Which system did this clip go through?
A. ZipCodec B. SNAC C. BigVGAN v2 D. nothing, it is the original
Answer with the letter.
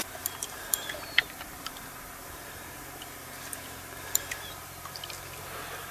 C